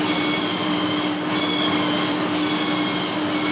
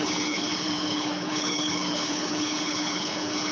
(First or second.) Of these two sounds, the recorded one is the first